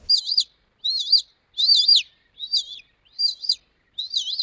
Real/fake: real